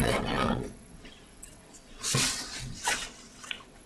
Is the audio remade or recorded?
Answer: remade